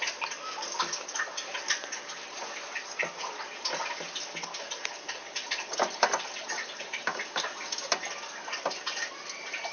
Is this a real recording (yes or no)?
yes